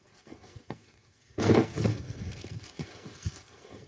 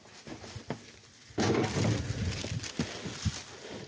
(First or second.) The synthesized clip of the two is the first